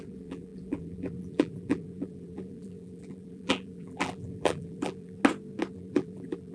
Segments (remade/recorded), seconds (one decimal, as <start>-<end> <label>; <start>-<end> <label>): 0.0-5.2 remade; 5.2-5.7 recorded; 5.7-6.5 remade